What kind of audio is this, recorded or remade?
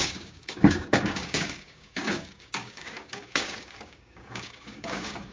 remade